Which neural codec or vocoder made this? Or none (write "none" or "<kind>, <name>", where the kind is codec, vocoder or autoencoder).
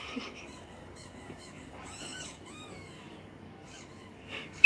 codec, DAC